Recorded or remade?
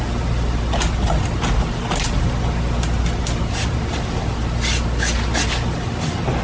recorded